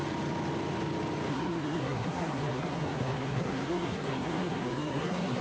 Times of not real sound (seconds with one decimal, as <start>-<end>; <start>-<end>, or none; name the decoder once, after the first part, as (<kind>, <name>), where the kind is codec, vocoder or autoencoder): 1.3-5.4 (codec, SNAC)